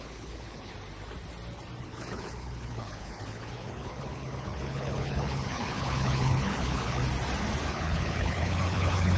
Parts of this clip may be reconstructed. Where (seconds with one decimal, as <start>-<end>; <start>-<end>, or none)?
0.0-0.7; 1.8-7.0; 7.7-9.2